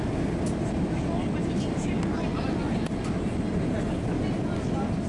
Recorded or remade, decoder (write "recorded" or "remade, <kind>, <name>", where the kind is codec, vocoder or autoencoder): recorded